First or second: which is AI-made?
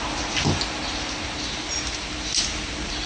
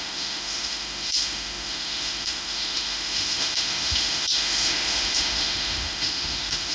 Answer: second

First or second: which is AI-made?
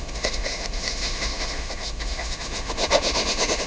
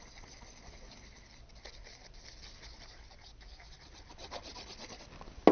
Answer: first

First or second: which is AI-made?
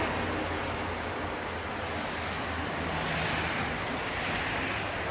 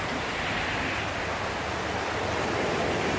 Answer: second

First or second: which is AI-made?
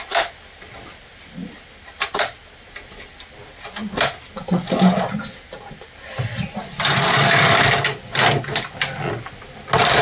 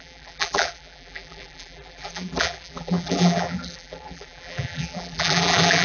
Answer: second